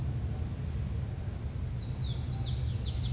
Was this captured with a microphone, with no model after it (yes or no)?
yes